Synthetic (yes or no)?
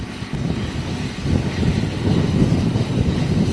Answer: no